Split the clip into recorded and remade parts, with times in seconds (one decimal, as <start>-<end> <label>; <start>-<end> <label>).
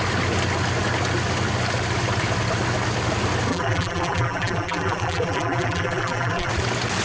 0.0-3.5 recorded; 3.5-6.5 remade; 6.5-7.0 recorded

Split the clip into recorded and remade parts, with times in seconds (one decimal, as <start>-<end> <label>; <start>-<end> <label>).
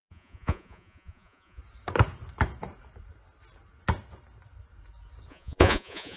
0.0-1.6 remade; 1.6-5.3 recorded; 5.3-6.2 remade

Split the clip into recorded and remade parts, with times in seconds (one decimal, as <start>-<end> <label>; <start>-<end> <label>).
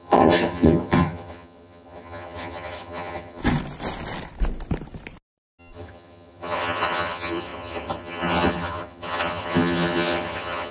0.0-3.4 remade; 3.4-5.6 recorded; 5.6-10.7 remade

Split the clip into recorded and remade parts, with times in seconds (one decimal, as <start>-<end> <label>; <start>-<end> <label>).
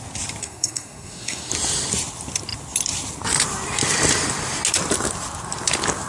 0.0-0.4 recorded; 0.4-1.5 remade; 1.5-6.1 recorded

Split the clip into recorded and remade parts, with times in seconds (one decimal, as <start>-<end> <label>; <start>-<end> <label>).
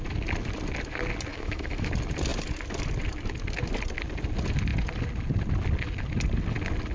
0.0-1.3 recorded; 1.3-1.9 remade; 1.9-6.9 recorded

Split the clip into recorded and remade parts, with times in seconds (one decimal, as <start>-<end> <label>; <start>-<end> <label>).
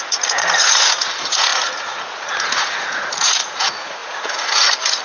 0.0-5.0 remade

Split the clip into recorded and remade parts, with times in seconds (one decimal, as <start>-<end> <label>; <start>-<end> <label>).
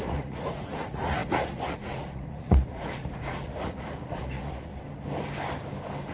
0.0-4.7 remade; 4.7-6.1 recorded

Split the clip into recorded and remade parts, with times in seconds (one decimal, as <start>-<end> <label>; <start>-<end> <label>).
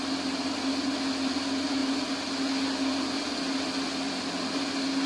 0.0-5.1 recorded